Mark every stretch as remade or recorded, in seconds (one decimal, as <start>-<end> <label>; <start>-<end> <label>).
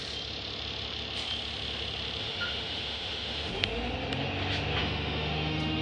0.0-2.2 recorded; 2.2-3.5 remade; 3.5-4.8 recorded; 4.8-5.8 remade